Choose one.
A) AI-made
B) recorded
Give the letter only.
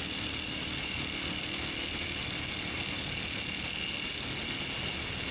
B